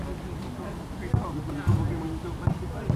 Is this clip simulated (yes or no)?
no